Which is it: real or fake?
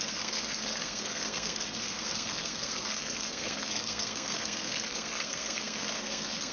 fake